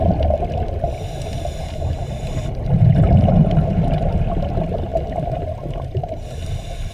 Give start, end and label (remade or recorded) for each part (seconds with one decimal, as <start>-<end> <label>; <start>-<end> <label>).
0.0-6.9 recorded